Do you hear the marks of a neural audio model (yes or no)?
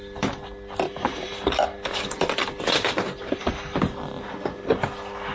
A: no